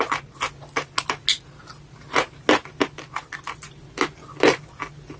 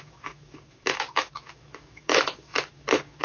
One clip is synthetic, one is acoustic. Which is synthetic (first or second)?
second